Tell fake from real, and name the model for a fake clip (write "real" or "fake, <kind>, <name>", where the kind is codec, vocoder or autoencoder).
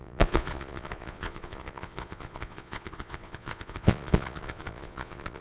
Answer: fake, vocoder, Vocos